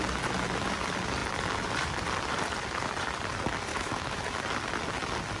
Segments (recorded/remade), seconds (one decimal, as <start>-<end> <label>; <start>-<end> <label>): 0.0-3.7 recorded; 3.7-4.2 remade; 4.2-5.4 recorded